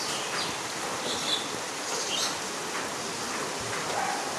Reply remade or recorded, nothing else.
recorded